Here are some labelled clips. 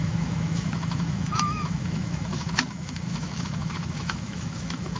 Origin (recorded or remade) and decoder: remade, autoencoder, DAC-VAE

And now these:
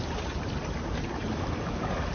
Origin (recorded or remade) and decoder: recorded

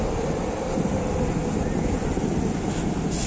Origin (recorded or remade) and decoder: recorded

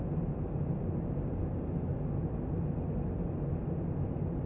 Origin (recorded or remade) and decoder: recorded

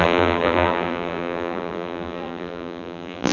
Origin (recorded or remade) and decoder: remade, vocoder, BigVGAN v2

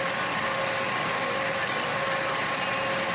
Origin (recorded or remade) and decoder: recorded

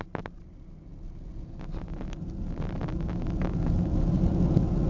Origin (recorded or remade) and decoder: recorded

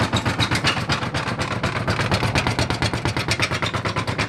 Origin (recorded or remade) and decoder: recorded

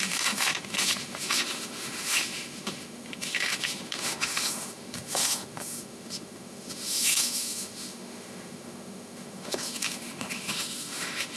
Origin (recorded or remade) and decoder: remade, autoencoder, DAC-VAE